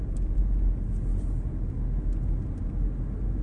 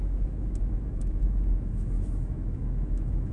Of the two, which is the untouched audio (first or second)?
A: first